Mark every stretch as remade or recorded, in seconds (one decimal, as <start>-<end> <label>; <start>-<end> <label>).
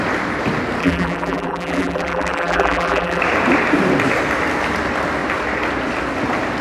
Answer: 0.0-0.8 recorded; 0.8-3.2 remade; 3.2-6.6 recorded